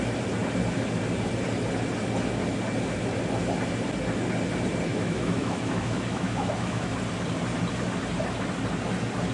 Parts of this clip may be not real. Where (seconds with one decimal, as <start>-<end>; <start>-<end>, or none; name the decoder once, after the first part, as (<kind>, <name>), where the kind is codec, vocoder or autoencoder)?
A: 4.9-6.9 (autoencoder, DAC-VAE)